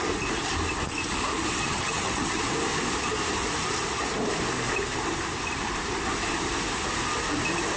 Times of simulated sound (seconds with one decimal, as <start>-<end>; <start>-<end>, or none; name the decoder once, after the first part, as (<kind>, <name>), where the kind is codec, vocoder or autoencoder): 1.6-2.4 (vocoder, HiFi-GAN)